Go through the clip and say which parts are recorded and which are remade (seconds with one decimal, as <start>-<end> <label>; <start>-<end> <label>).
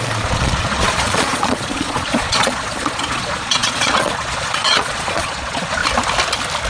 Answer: 0.0-5.8 remade; 5.8-6.7 recorded